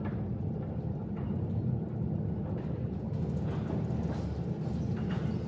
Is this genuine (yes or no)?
yes